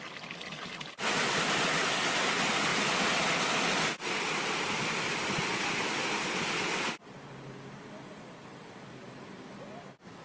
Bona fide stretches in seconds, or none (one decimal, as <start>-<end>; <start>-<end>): 0.0-10.2